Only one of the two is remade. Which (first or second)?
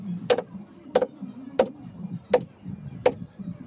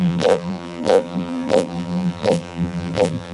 second